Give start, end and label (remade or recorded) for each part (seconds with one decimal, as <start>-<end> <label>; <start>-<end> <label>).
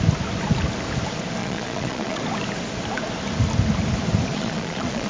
0.0-1.4 recorded; 1.4-2.2 remade; 2.2-4.3 recorded; 4.3-5.1 remade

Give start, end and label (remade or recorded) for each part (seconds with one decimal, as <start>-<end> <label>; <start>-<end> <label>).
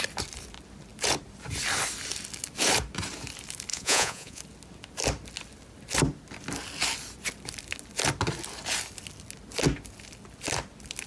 0.0-3.7 recorded; 3.7-4.4 remade; 4.4-11.1 recorded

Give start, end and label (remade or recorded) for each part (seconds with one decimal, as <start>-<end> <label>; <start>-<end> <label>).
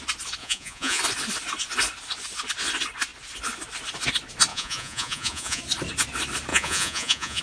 0.0-0.4 recorded; 0.4-1.0 remade; 1.0-4.5 recorded; 4.5-5.6 remade; 5.6-6.5 recorded; 6.5-7.4 remade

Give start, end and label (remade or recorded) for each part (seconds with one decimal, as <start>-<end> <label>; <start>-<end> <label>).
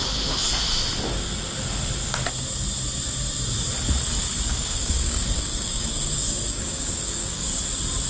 0.0-4.5 recorded; 4.5-7.5 remade; 7.5-8.1 recorded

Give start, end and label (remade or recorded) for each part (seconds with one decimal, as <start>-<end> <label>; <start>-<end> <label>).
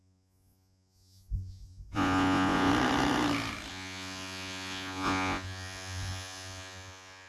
0.0-2.7 remade; 2.7-3.7 recorded; 3.7-7.3 remade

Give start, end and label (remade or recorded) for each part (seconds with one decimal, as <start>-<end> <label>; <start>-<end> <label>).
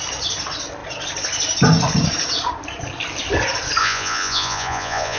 0.0-3.8 recorded; 3.8-5.2 remade